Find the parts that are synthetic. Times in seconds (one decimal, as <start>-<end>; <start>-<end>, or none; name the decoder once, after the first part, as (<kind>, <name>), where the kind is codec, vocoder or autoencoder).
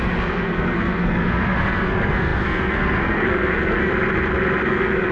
0.0-3.9 (codec, SNAC); 4.6-5.1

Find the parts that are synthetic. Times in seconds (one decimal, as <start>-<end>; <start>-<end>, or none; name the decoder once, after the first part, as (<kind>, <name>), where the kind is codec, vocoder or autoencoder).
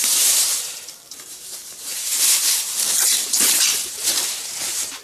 0.0-5.0 (vocoder, BigVGAN v2)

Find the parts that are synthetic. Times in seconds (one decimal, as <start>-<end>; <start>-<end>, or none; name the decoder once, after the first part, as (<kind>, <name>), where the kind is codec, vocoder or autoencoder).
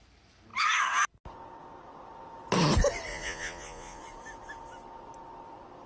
3.1-4.0 (vocoder, Vocos)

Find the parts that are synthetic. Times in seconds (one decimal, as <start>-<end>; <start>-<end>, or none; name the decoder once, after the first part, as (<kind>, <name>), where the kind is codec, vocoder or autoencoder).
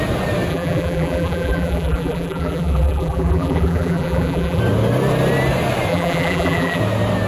0.5-4.6 (vocoder, BigVGAN v2); 5.9-6.8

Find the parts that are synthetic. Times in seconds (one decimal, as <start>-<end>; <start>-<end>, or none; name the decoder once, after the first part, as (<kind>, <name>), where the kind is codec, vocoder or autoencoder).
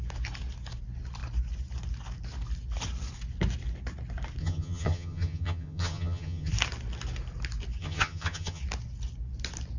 4.4-6.5 (vocoder, HiFi-GAN); 7.8-8.6